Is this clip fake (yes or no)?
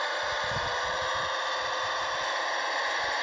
no